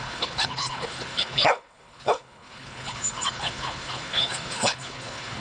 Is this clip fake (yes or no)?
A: yes